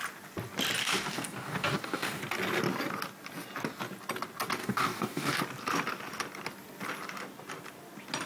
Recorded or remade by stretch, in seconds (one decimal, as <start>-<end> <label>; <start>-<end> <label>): 0.0-0.8 recorded; 0.8-2.2 remade; 2.2-4.6 recorded; 4.6-5.4 remade; 5.4-8.3 recorded